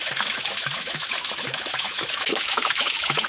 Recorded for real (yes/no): no